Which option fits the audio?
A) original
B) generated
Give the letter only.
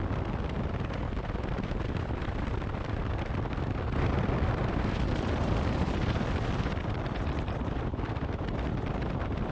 B